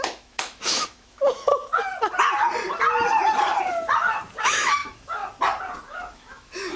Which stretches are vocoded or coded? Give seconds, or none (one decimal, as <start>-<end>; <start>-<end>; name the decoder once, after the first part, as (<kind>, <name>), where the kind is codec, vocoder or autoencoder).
0.0-1.5 (autoencoder, DAC-VAE); 4.4-5.2; 5.9-6.8